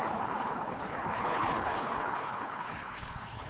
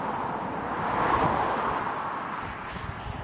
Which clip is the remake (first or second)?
first